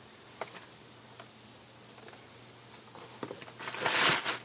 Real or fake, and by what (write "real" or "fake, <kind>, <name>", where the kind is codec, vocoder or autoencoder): real